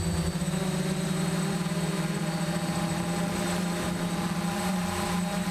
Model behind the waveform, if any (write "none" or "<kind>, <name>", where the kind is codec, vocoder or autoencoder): vocoder, BigVGAN v2